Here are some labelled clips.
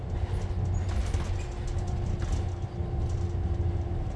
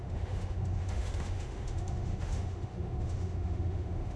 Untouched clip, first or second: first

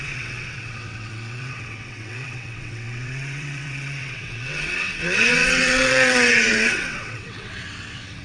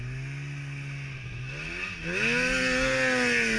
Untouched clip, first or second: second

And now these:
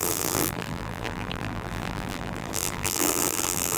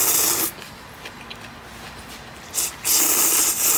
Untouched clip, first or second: second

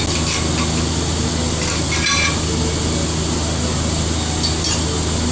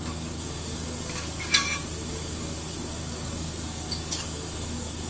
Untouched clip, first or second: first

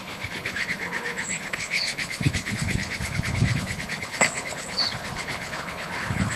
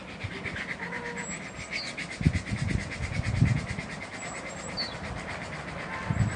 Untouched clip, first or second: second